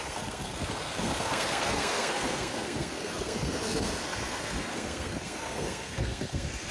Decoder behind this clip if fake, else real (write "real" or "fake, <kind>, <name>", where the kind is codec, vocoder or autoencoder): fake, codec, SNAC